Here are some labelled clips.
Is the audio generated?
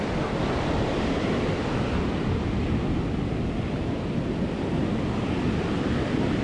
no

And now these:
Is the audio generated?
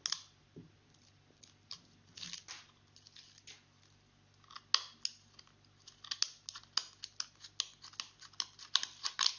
no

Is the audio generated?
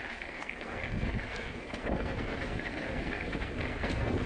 yes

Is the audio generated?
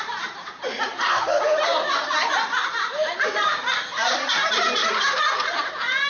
yes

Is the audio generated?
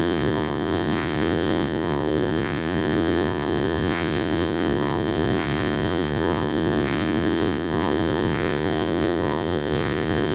yes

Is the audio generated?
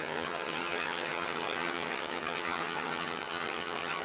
yes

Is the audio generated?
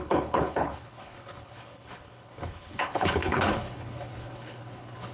yes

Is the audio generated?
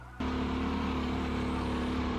no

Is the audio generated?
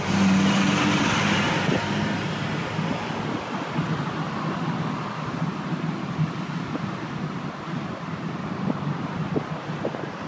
no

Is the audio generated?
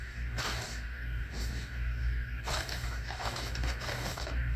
yes